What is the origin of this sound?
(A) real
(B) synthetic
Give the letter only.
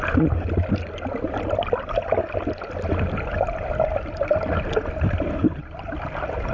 A